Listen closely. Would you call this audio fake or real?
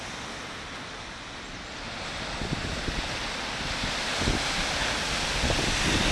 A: real